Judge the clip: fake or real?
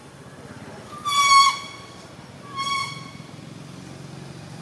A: real